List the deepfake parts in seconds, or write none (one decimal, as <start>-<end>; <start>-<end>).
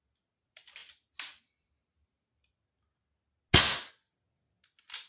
none